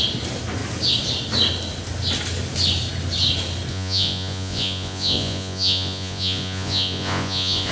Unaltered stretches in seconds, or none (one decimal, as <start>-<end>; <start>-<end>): 0.0-3.7